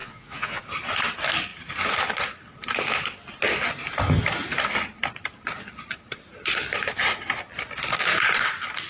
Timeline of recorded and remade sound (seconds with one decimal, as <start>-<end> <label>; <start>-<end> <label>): 0.0-0.6 remade; 0.6-8.9 recorded